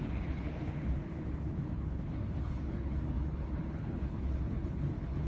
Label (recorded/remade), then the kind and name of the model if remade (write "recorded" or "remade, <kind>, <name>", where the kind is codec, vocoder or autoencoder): remade, codec, HILCodec